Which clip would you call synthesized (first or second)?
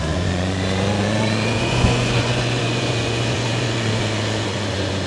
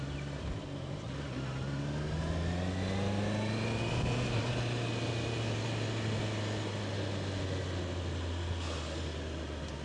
first